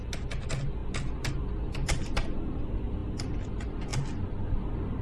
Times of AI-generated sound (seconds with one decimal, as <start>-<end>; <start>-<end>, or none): none